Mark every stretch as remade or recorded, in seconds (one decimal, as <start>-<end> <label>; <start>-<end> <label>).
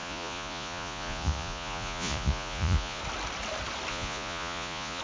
0.0-3.0 remade; 3.0-3.9 recorded; 3.9-5.0 remade